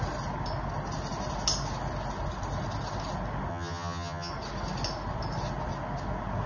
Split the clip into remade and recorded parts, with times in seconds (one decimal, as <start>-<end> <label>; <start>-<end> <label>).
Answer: 0.0-3.5 recorded; 3.5-4.3 remade; 4.3-6.5 recorded